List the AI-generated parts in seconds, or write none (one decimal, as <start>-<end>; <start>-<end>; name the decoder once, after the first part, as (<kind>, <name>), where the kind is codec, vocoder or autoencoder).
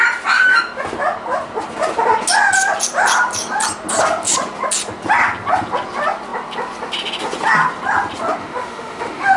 8.4-9.4 (autoencoder, DAC-VAE)